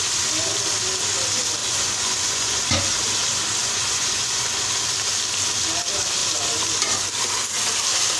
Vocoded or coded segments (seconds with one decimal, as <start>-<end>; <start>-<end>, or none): 1.6-2.6; 3.6-4.6